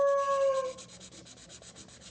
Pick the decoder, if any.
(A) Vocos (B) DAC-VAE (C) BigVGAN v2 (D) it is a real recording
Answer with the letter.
D